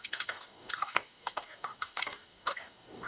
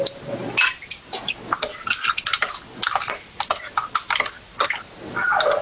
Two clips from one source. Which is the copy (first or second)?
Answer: first